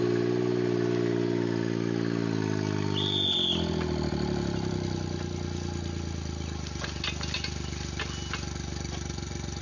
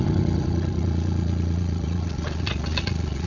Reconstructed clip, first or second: second